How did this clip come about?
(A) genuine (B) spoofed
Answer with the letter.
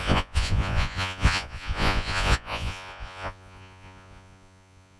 B